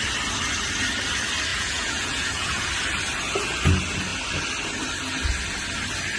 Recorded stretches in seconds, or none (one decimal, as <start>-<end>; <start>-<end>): 0.0-1.5; 2.7-6.2